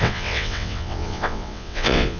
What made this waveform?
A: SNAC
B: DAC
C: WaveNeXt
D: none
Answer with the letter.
C